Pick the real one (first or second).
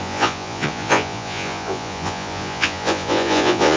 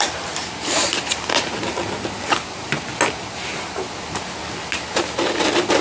second